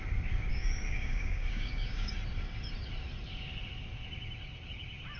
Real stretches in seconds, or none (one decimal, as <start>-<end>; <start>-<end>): 0.0-0.5; 2.1-5.2